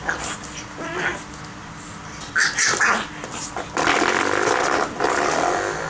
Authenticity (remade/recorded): recorded